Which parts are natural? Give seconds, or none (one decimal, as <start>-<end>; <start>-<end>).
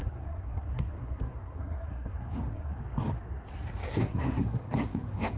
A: 2.8-3.9